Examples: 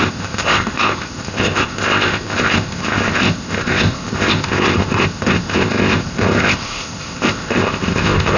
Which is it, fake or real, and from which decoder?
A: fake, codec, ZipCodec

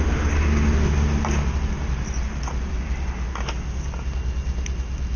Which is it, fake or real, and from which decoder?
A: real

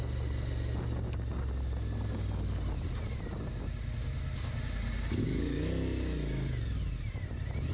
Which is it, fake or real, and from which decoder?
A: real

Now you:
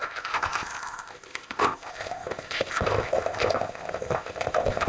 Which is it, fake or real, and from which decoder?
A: fake, codec, ZipCodec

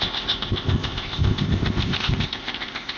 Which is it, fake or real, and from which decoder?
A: fake, codec, ZipCodec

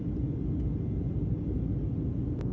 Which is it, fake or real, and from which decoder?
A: real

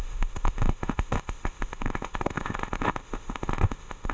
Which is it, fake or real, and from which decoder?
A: fake, codec, ZipCodec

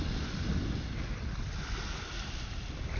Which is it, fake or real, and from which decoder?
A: real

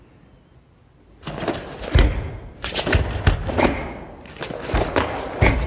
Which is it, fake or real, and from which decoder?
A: real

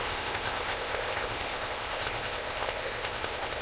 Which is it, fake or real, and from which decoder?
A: fake, codec, ZipCodec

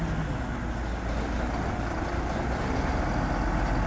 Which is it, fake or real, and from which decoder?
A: real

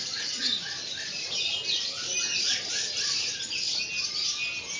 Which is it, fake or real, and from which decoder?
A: real